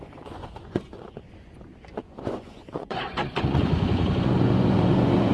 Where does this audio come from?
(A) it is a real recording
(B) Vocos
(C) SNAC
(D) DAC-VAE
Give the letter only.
B